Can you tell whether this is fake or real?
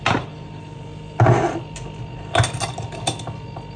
real